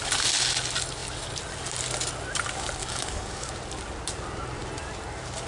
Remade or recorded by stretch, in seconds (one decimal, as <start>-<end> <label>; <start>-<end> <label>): 0.0-2.8 recorded; 2.8-3.5 remade; 3.5-5.5 recorded